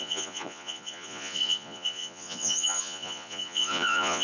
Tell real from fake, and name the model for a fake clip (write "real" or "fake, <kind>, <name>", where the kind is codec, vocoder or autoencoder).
fake, vocoder, Vocos